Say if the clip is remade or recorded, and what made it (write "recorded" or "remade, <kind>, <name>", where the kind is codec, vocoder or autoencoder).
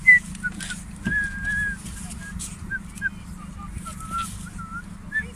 recorded